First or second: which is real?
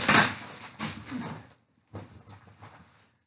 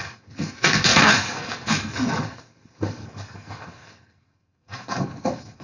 first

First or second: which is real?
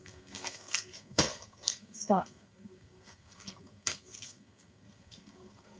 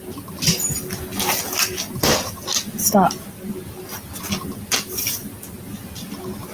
second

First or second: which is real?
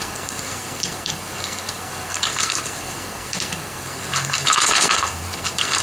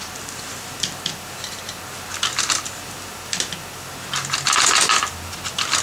second